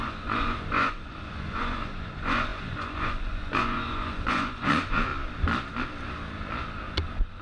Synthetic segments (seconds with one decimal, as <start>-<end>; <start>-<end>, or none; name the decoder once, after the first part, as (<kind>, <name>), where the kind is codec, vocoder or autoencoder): 0.0-5.1 (vocoder, Vocos)